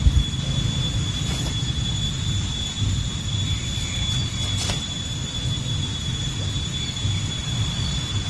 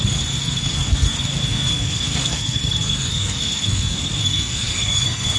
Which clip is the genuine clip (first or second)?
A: first